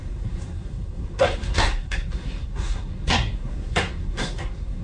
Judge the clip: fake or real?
fake